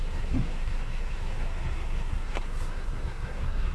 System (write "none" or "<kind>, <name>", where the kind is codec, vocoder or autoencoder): codec, SNAC